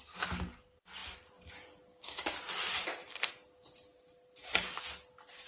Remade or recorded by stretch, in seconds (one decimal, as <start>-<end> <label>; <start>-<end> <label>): 0.0-1.9 recorded; 1.9-2.4 remade; 2.4-5.5 recorded

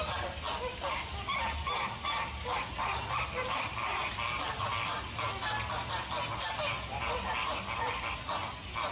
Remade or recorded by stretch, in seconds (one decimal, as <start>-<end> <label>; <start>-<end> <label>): 0.0-0.7 recorded; 0.7-1.2 remade; 1.2-8.9 recorded

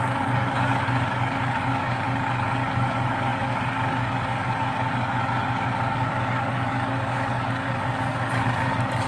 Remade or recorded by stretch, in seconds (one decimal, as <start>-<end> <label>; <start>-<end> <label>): 0.0-9.1 remade

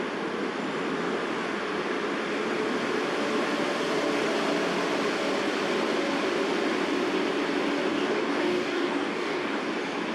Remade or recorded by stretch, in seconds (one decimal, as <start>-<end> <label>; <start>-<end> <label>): 0.0-7.9 recorded; 7.9-9.6 remade; 9.6-10.1 recorded

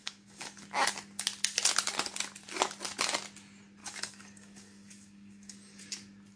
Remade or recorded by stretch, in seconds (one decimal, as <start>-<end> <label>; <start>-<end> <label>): 0.0-0.6 remade; 0.6-3.8 recorded; 3.8-5.8 remade; 5.8-6.4 recorded